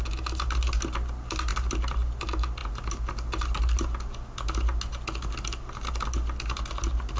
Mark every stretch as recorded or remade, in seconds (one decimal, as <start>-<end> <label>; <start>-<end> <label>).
0.0-7.2 recorded